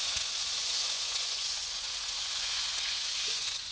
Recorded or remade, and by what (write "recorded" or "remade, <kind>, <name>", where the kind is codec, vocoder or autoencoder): remade, vocoder, Vocos